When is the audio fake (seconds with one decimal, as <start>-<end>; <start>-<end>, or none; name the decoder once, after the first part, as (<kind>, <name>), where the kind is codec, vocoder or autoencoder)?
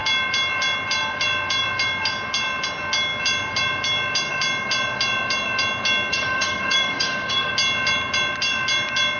6.1-7.5 (codec, DAC)